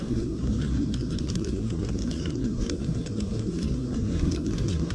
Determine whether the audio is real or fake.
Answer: fake